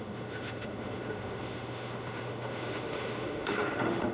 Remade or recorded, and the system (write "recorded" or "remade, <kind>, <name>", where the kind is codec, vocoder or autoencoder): remade, autoencoder, DAC-VAE